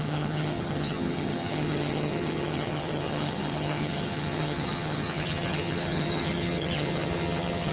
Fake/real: fake